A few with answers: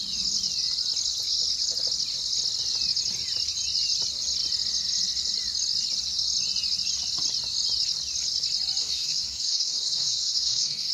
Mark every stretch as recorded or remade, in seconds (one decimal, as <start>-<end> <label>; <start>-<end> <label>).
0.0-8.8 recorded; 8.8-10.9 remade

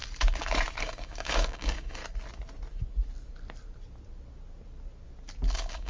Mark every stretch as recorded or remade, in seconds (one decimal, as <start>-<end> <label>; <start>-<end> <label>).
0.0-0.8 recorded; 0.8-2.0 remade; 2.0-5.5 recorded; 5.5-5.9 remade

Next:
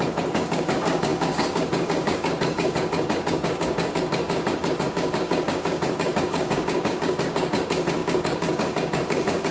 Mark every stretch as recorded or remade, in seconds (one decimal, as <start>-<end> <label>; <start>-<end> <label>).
0.0-9.5 remade

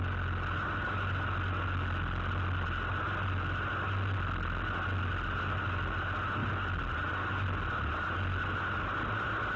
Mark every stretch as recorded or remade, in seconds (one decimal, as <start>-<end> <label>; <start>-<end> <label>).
0.0-9.6 recorded

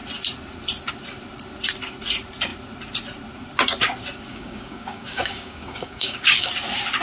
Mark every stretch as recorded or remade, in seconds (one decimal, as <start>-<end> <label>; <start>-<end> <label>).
0.0-4.3 recorded; 4.3-6.5 remade; 6.5-7.0 recorded

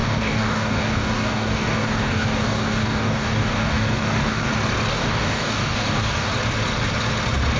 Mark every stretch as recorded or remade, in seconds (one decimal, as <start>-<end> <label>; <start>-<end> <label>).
0.0-4.5 remade; 4.5-4.9 recorded; 4.9-6.3 remade; 6.3-7.6 recorded

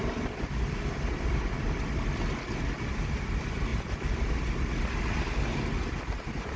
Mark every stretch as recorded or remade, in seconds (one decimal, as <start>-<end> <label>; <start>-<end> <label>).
0.0-6.6 recorded

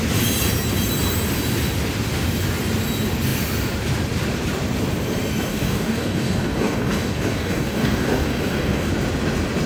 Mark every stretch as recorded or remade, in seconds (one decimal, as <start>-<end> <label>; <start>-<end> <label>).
0.0-5.5 recorded; 5.5-8.9 remade; 8.9-9.7 recorded